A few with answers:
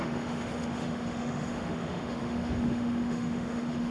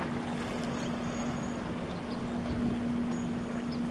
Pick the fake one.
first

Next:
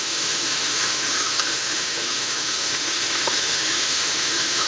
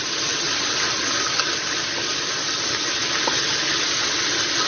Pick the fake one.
first